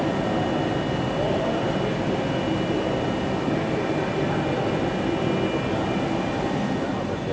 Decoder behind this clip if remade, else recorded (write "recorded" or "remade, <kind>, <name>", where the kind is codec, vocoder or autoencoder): recorded